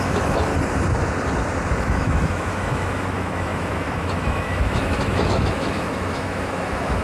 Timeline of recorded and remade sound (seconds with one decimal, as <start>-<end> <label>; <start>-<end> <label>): 0.0-0.5 remade; 0.5-1.8 recorded; 1.8-7.0 remade